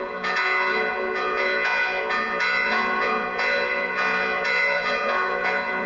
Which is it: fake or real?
fake